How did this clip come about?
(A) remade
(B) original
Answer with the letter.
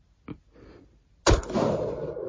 B